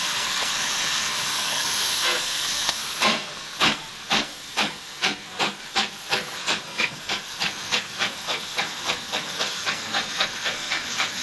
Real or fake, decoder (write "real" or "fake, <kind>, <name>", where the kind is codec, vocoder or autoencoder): fake, codec, SNAC